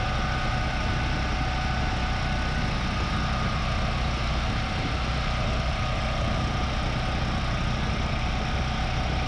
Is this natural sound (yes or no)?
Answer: yes